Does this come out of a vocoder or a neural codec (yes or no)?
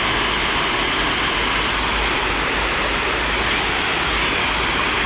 no